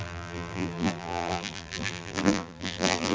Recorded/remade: remade